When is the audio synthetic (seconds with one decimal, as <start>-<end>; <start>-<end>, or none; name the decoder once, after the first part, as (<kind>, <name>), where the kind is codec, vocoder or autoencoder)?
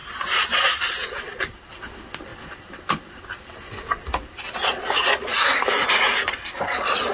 0.0-0.9 (vocoder, BigVGAN v2)